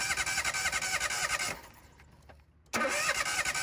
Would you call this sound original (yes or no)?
yes